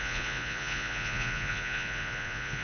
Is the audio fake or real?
fake